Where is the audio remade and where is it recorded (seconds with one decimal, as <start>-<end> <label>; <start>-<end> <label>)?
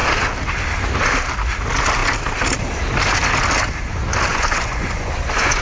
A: 0.0-4.3 recorded; 4.3-5.6 remade